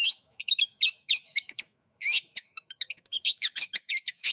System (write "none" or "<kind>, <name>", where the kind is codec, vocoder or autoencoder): autoencoder, DAC-VAE